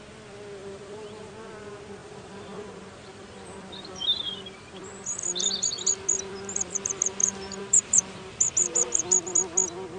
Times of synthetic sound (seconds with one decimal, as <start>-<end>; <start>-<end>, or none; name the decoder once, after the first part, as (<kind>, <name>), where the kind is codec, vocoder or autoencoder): 0.6-1.3 (vocoder, BigVGAN v2); 2.0-3.3; 7.2-8.4